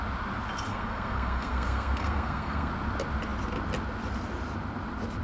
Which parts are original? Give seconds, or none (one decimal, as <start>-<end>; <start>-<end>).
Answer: 0.0-0.7; 2.7-5.2